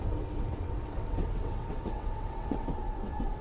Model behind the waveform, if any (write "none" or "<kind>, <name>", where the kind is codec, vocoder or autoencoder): vocoder, WaveNeXt